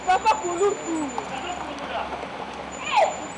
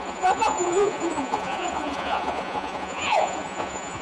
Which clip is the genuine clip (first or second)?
first